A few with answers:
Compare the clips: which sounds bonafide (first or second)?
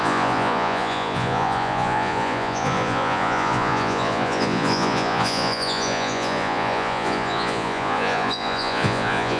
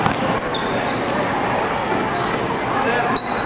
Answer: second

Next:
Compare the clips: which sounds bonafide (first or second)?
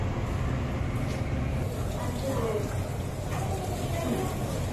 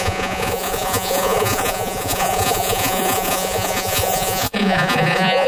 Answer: first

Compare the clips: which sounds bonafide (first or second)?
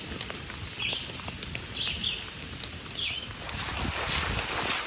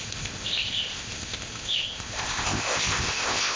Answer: first